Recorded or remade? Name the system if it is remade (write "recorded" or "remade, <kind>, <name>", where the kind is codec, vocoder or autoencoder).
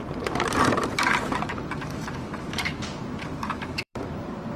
remade, vocoder, BigVGAN v2